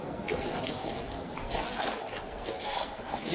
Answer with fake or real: fake